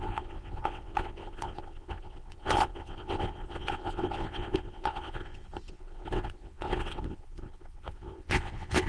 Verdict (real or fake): fake